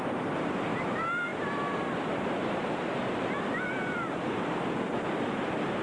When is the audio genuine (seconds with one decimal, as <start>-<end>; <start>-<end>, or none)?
0.0-5.8

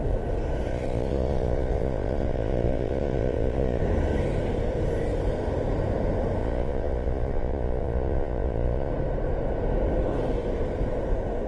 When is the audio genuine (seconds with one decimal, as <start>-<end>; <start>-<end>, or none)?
0.0-0.7; 3.8-6.4; 8.9-11.5

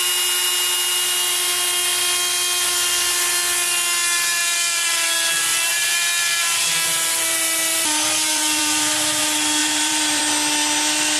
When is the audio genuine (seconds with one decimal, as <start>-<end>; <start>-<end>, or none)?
0.0-4.4; 9.2-9.6; 10.2-11.2